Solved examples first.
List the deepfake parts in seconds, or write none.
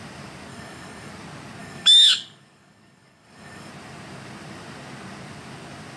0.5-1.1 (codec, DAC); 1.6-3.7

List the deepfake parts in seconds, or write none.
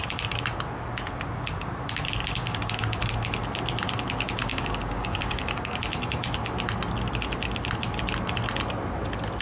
2.4-3.0 (codec, DAC); 4.5-5.8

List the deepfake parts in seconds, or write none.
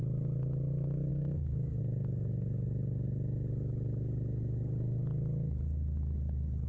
1.1-1.8 (codec, DAC)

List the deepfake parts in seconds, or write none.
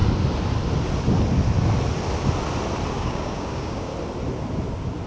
2.9-3.9 (codec, DAC)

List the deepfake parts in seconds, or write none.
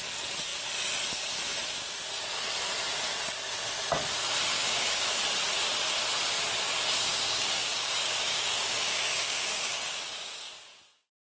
4.5-5.2 (codec, DAC); 7.1-10.5